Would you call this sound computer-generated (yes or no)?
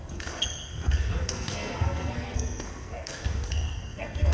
yes